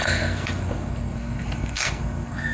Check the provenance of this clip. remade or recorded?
remade